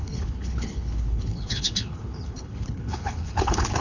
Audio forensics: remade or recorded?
remade